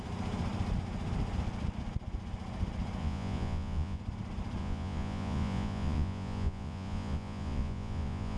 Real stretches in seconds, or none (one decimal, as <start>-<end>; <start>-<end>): 0.0-3.0; 4.0-4.6